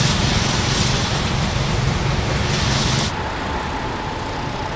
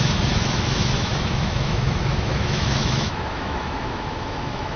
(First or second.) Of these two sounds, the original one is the first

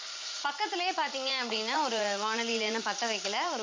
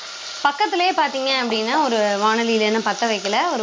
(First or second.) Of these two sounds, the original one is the second